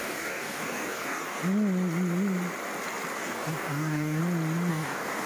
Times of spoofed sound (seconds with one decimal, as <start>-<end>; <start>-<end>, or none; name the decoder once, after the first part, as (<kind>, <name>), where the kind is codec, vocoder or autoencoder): 0.0-1.4 (codec, DAC); 3.1-4.2; 4.7-5.3